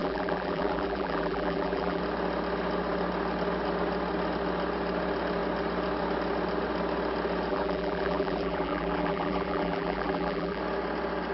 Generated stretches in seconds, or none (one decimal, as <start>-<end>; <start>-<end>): 0.0-2.0; 7.5-10.6